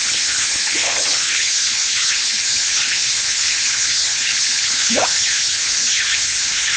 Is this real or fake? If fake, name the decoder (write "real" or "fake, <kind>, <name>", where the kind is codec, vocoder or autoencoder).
fake, codec, HILCodec